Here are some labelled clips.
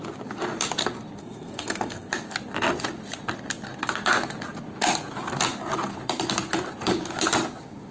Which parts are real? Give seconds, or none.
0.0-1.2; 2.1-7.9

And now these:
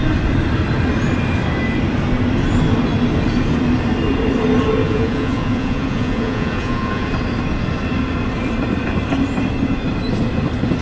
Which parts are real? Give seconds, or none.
0.0-4.8; 7.1-10.8

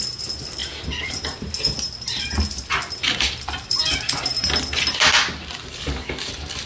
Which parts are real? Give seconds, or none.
0.0-5.7; 6.3-6.7

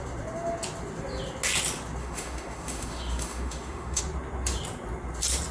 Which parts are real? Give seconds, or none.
0.0-2.0; 4.0-5.5

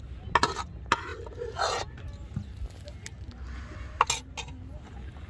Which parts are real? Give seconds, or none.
0.0-5.3